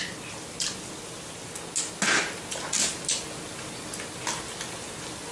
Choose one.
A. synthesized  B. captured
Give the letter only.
B